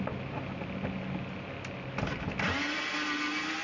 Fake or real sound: real